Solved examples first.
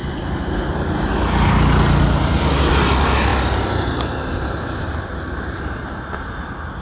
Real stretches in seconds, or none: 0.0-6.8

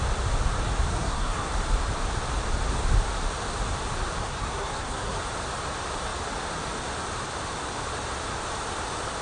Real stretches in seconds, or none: 0.0-0.9; 1.5-4.2; 5.2-9.2